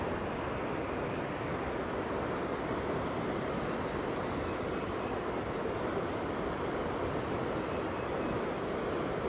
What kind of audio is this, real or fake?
real